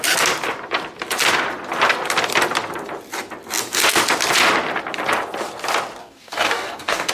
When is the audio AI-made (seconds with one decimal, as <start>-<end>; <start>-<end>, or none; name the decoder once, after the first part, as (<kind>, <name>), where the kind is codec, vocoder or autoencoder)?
6.0-7.1 (codec, DAC)